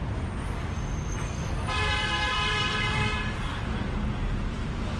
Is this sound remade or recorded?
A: remade